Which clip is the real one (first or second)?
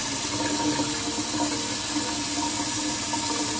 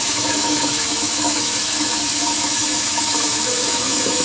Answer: first